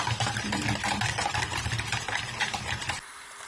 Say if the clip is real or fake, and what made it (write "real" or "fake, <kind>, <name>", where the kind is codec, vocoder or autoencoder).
real